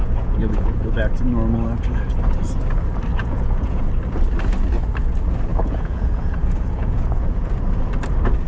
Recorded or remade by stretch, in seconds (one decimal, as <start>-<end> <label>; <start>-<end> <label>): 0.0-1.0 remade; 1.0-3.2 recorded; 3.2-3.8 remade; 3.8-5.5 recorded; 5.5-7.6 remade; 7.6-8.5 recorded